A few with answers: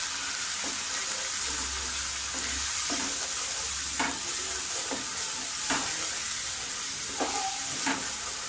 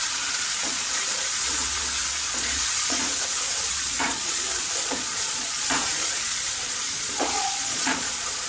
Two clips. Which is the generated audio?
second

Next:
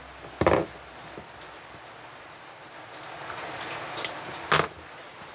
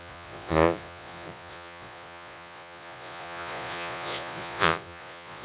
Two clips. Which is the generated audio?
second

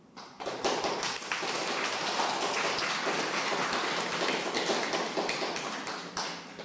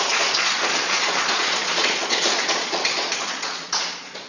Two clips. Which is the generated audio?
second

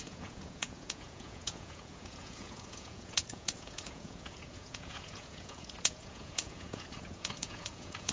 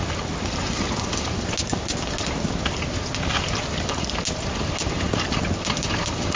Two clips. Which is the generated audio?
first